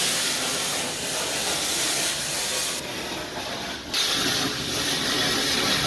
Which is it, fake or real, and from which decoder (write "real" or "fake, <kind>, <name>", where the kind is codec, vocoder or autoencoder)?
real